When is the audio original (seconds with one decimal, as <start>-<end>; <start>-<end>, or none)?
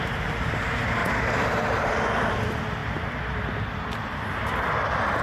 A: 0.0-5.2